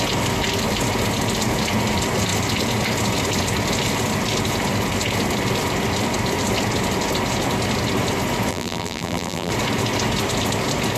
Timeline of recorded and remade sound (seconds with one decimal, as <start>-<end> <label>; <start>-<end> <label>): 0.0-8.5 recorded; 8.5-9.5 remade; 9.5-11.0 recorded